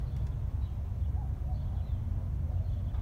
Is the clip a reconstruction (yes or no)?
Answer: no